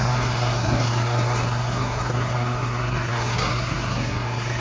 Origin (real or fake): fake